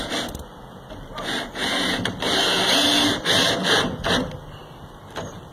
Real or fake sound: real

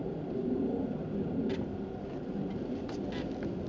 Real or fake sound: real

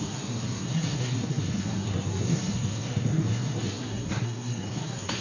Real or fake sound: fake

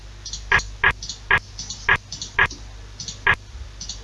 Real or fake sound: real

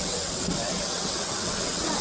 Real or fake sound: fake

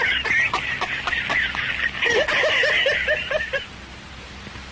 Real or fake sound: real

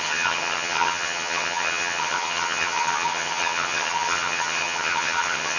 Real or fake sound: fake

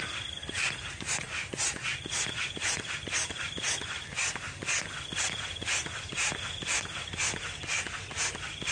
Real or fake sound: real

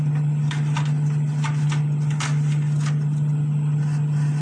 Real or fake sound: real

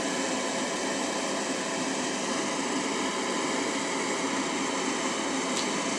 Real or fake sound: real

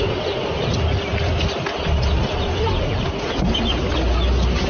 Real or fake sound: real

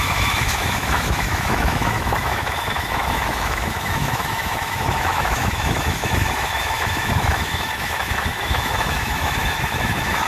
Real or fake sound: fake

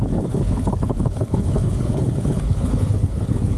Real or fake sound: fake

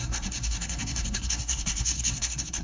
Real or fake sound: fake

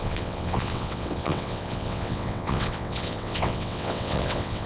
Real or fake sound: fake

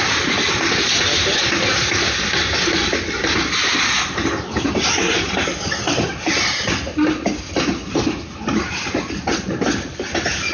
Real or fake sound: real